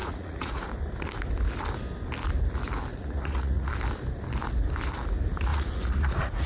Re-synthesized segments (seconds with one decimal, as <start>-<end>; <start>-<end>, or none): 0.0-0.7; 2.9-3.7; 5.5-6.5